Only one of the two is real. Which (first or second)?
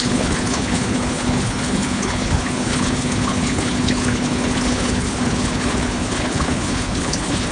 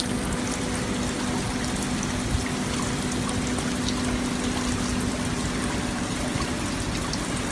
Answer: second